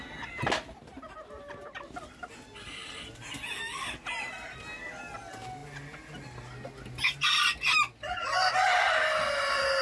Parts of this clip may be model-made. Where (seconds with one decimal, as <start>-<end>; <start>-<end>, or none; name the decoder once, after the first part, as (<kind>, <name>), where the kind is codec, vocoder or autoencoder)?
0.9-2.2 (vocoder, BigVGAN v2)